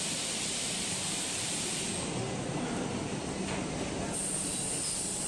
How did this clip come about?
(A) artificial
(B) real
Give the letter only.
A